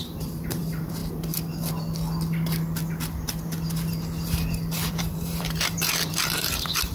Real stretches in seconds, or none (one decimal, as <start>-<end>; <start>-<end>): 1.0-4.9